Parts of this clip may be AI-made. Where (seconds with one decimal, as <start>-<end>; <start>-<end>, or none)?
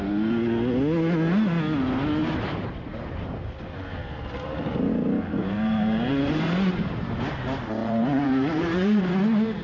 2.2-3.4; 5.4-7.3; 7.8-9.0